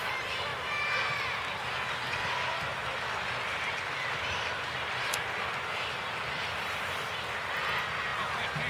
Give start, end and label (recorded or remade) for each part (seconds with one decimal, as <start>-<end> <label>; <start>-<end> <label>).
0.0-0.5 recorded; 0.5-1.2 remade; 1.2-2.7 recorded; 2.7-7.1 remade; 7.1-8.1 recorded; 8.1-8.7 remade